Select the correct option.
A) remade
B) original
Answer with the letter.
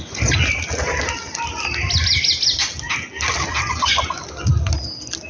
B